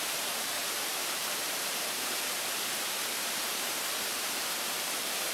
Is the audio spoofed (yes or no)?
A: yes